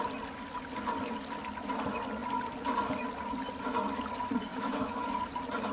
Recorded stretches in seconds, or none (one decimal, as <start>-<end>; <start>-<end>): 0.0-4.5; 5.1-5.7